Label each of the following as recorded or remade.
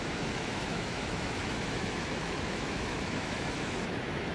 remade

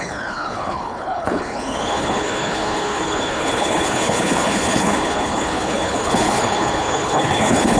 remade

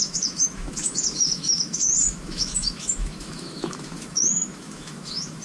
remade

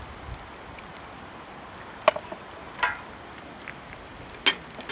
recorded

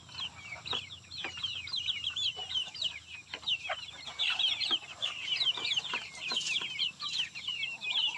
remade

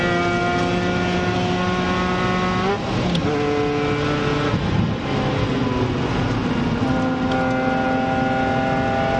recorded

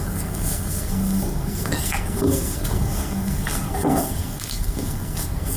remade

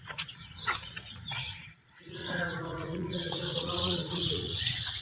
remade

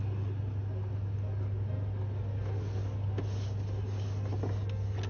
recorded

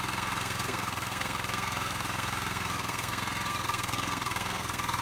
remade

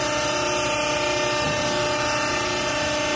recorded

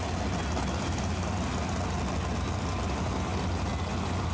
recorded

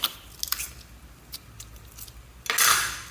recorded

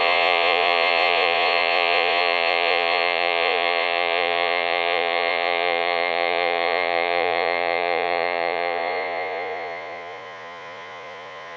remade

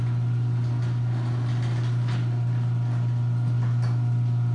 recorded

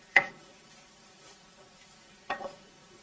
remade